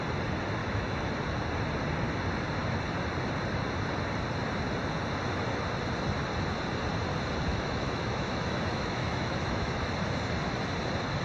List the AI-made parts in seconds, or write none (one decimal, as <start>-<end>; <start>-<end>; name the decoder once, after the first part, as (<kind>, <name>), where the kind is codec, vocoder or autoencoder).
0.6-1.1 (autoencoder, DAC-VAE); 7.5-9.9